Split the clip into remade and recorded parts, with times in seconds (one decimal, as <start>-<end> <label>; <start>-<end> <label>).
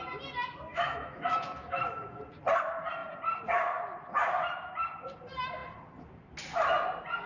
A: 0.0-0.7 recorded; 0.7-2.2 remade; 2.2-7.3 recorded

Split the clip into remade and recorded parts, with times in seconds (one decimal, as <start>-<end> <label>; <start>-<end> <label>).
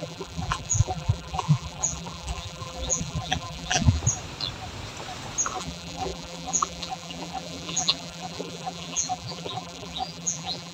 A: 0.0-4.0 remade; 4.0-5.6 recorded; 5.6-10.7 remade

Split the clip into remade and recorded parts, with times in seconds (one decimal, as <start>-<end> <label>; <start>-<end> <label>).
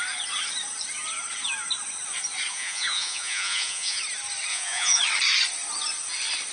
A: 0.0-2.5 recorded; 2.5-4.0 remade; 4.0-4.5 recorded; 4.5-5.0 remade; 5.0-6.5 recorded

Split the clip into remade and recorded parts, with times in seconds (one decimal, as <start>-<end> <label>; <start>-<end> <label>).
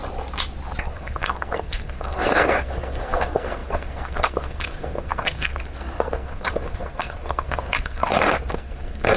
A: 0.0-0.8 recorded; 0.8-9.2 remade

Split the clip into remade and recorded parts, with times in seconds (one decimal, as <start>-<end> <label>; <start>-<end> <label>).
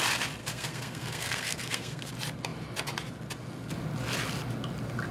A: 0.0-0.4 recorded; 0.4-2.1 remade; 2.1-5.1 recorded